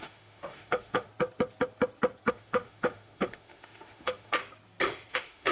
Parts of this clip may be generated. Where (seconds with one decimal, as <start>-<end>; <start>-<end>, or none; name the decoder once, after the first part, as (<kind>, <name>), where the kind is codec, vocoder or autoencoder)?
0.0-1.1 (autoencoder, DAC-VAE); 2.3-4.4; 5.1-5.5